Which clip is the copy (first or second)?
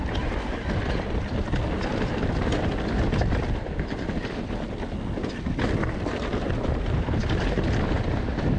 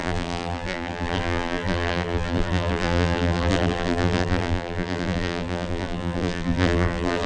second